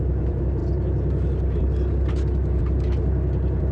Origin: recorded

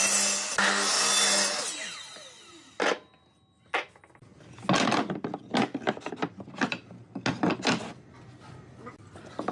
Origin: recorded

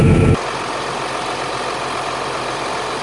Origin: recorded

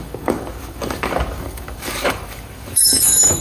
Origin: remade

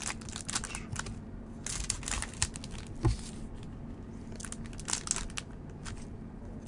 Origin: recorded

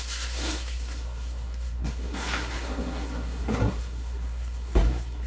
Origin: remade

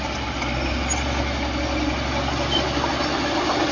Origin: recorded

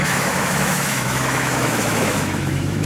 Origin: remade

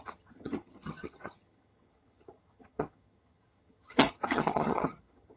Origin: remade